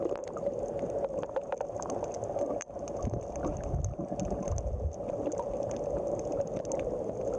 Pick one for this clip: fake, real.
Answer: real